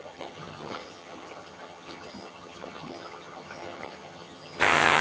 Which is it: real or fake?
fake